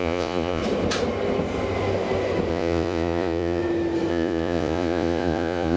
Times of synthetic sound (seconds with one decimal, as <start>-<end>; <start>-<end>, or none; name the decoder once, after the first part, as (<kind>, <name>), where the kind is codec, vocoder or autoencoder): 0.0-0.6 (vocoder, Vocos); 2.5-3.6; 4.1-5.8